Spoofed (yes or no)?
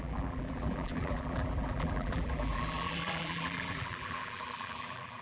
yes